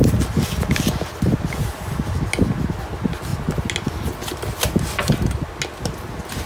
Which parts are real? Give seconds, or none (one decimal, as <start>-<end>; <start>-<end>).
0.0-6.5

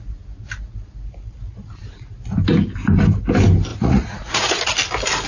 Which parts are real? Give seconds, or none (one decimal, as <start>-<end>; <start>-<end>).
0.0-3.7; 4.6-5.3

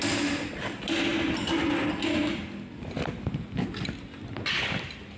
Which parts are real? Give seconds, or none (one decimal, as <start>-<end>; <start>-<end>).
0.0-5.2

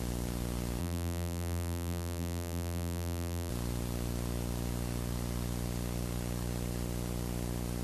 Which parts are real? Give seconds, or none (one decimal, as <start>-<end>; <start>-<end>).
0.0-0.8; 3.5-7.8

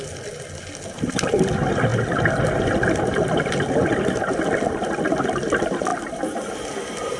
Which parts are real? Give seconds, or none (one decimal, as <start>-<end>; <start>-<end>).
0.0-5.9; 6.5-7.2

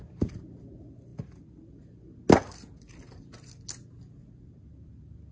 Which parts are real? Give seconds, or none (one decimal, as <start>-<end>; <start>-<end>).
0.0-5.3

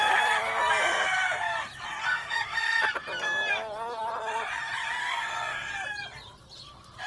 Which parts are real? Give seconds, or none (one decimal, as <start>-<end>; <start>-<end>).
0.0-2.0; 2.8-5.0; 5.7-7.1